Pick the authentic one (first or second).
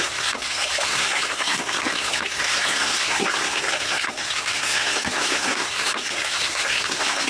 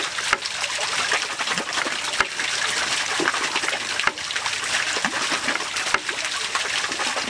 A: second